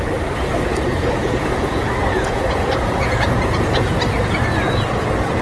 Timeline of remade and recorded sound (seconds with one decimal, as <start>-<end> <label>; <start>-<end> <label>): 0.0-0.7 recorded; 0.7-3.9 remade; 3.9-5.4 recorded